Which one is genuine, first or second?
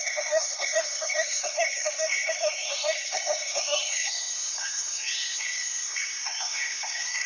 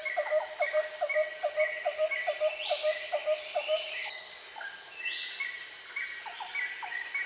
second